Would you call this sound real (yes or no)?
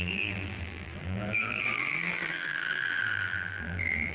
no